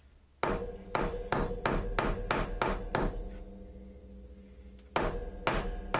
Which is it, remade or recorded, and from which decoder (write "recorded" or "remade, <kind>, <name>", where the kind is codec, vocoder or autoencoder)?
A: recorded